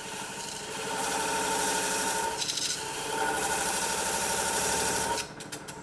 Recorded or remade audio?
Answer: remade